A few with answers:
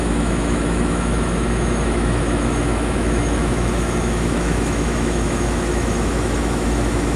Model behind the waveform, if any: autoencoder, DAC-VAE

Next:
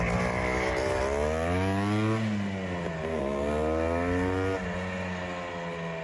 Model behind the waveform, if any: none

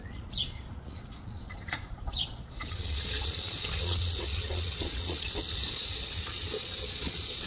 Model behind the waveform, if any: vocoder, Vocos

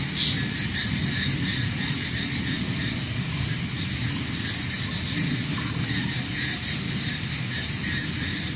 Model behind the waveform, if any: none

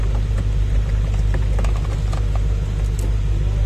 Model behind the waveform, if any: none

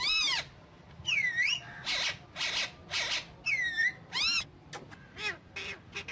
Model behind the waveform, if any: none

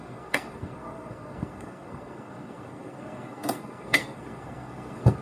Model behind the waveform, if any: codec, SNAC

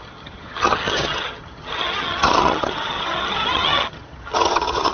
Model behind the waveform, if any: vocoder, HiFi-GAN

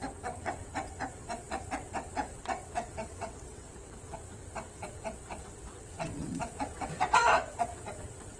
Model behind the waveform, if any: vocoder, WaveNeXt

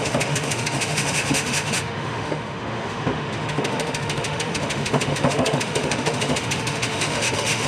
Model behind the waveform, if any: autoencoder, DAC-VAE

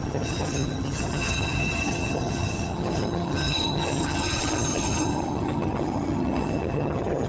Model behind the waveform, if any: vocoder, HiFi-GAN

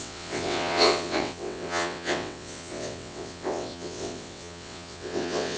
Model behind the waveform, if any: vocoder, WaveNeXt